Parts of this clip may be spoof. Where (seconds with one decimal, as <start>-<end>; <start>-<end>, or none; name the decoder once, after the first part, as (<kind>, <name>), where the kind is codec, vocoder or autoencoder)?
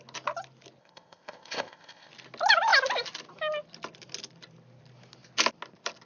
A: 0.8-2.1 (codec, ZipCodec)